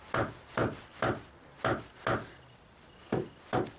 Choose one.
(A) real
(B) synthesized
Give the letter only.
A